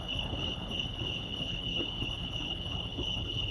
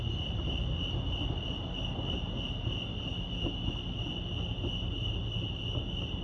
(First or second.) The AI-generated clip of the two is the first